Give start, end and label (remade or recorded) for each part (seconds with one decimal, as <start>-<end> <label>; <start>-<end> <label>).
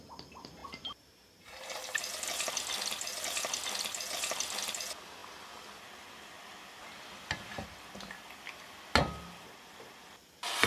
0.0-0.6 recorded; 0.6-1.7 remade; 1.7-10.7 recorded